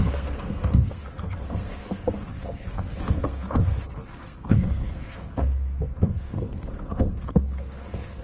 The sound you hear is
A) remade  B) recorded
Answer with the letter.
A